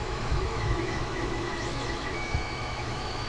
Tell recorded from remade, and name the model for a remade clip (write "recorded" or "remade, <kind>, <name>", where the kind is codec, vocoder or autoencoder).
remade, autoencoder, DAC-VAE